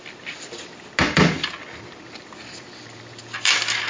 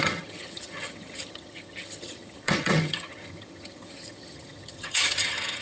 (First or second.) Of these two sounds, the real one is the first